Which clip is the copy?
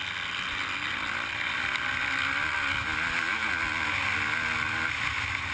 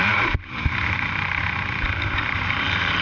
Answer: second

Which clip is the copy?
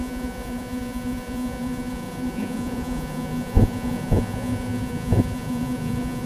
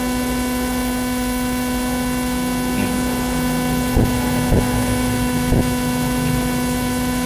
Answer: first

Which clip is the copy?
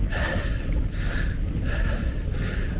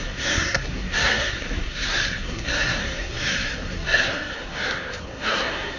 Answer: second